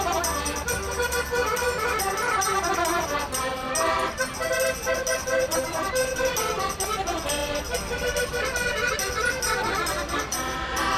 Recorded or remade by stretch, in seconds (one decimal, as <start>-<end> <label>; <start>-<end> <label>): 0.0-5.5 recorded; 5.5-6.6 remade; 6.6-11.0 recorded